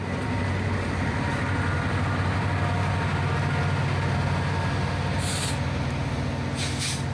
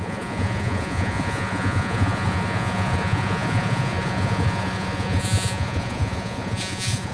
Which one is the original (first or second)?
first